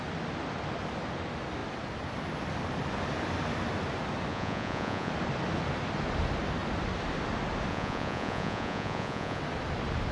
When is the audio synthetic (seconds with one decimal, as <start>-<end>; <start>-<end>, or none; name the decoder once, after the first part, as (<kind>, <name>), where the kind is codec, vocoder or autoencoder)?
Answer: 4.3-5.1 (vocoder, Vocos); 7.7-9.4